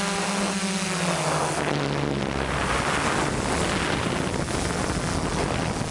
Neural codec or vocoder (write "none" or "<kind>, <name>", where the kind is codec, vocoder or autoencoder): none